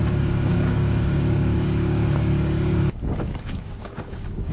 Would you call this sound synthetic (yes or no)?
yes